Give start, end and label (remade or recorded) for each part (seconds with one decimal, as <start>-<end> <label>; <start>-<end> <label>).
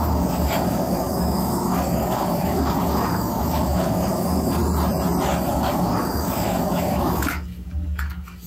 0.0-4.6 remade; 4.6-5.5 recorded; 5.5-8.5 remade